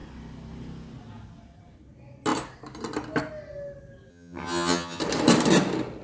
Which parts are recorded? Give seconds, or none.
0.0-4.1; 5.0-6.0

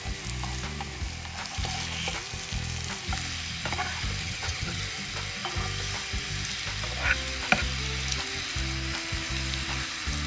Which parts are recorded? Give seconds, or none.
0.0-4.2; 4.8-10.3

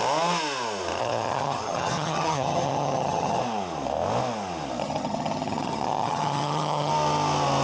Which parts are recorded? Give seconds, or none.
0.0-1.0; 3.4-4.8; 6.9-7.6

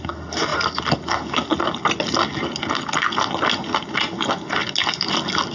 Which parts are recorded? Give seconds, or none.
0.0-5.5